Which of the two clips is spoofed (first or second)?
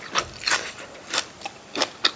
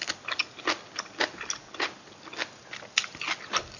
first